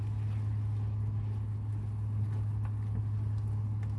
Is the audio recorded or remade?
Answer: recorded